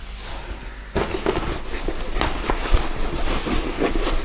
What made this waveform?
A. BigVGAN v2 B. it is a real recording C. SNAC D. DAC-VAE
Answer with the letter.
B